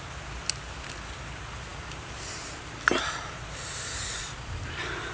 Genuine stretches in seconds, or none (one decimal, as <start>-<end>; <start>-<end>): 0.0-5.1